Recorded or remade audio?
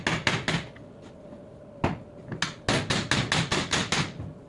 recorded